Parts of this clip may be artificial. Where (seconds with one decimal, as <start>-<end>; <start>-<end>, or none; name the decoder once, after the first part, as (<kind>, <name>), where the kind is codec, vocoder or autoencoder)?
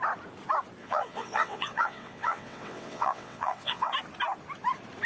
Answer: 0.8-3.9 (vocoder, WaveNeXt)